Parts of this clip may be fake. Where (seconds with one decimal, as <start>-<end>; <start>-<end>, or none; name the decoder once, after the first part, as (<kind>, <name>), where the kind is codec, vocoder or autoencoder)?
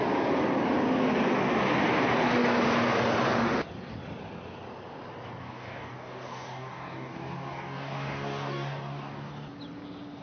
5.4-9.3 (codec, DAC)